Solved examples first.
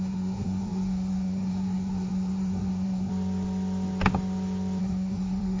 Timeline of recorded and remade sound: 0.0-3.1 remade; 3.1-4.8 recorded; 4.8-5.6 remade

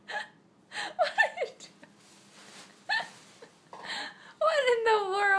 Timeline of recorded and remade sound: 0.0-5.4 recorded

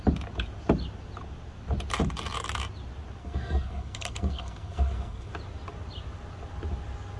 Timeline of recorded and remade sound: 0.0-3.2 recorded; 3.2-5.3 remade; 5.3-7.2 recorded

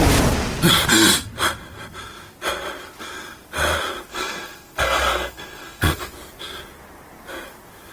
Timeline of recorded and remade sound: 0.0-4.1 recorded; 4.1-6.1 remade; 6.1-7.9 recorded

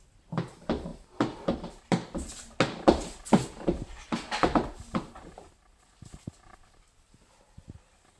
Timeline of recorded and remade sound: 0.0-8.2 recorded